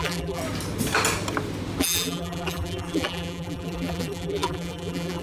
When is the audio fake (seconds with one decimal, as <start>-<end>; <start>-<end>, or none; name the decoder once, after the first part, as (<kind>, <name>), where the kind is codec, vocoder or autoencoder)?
0.0-0.4 (vocoder, BigVGAN v2); 1.8-5.2